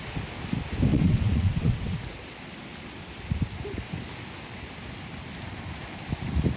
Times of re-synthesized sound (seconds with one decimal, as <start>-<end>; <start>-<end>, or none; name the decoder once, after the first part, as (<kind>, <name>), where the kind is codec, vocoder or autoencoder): 0.9-2.0 (vocoder, WaveNeXt)